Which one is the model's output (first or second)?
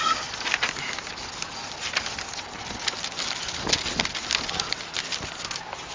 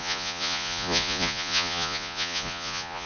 second